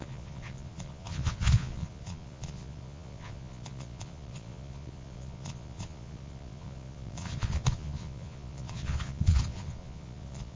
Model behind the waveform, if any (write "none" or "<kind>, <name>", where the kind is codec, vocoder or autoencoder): vocoder, Vocos